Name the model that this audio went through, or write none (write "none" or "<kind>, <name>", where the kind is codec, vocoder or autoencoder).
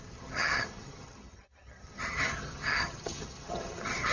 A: vocoder, HiFi-GAN